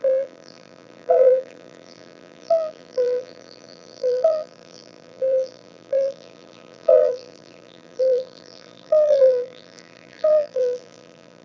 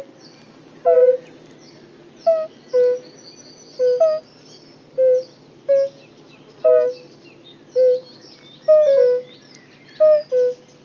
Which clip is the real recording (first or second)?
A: second